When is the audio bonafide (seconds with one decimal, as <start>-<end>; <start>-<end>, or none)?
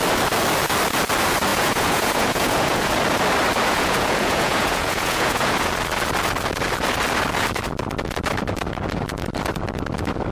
0.0-1.5; 2.9-3.7; 5.7-10.3